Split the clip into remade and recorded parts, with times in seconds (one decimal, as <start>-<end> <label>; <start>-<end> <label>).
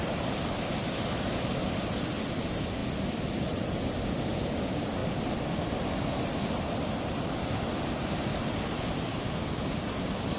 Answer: 0.0-10.4 recorded